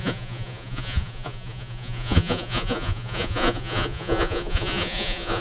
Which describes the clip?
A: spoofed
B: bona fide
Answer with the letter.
A